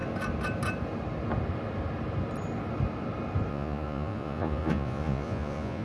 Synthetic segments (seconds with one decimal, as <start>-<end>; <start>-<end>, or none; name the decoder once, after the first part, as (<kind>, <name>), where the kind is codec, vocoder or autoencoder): 3.5-5.8 (vocoder, Vocos)